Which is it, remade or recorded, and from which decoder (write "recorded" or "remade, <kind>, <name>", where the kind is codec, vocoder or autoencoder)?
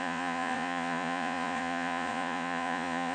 remade, vocoder, Vocos